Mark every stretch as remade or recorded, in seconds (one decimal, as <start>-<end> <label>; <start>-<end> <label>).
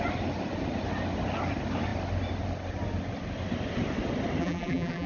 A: 0.0-4.4 recorded; 4.4-5.1 remade